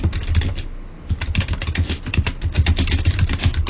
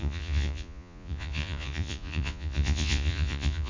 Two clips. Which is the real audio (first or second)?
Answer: first